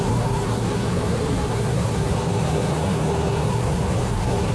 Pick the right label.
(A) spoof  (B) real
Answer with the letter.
A